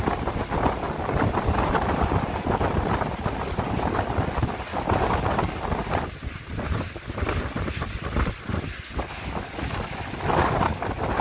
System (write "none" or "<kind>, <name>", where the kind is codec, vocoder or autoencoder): none